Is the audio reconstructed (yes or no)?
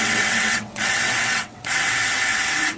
yes